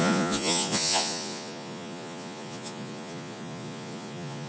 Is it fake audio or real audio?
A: fake